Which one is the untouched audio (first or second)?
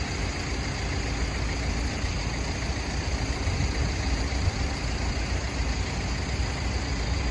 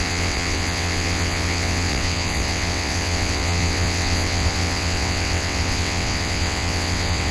first